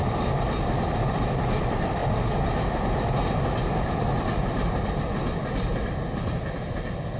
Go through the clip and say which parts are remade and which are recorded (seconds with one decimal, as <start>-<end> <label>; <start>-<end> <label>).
0.0-7.2 recorded